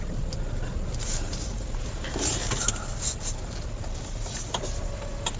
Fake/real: real